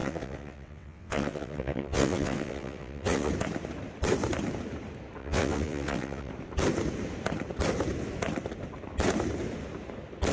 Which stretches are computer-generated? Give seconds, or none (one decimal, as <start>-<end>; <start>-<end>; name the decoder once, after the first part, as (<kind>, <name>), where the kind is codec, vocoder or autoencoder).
0.0-3.3 (vocoder, WaveNeXt); 5.2-6.3